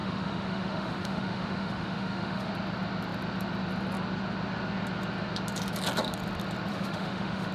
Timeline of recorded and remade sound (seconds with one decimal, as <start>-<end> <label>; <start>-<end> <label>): 0.0-2.5 remade; 2.5-6.7 recorded; 6.7-7.5 remade